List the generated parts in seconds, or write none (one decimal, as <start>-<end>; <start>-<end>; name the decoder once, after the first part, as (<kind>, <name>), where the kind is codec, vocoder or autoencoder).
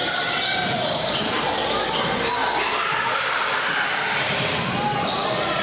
none